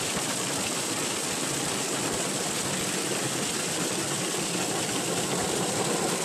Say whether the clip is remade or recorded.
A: remade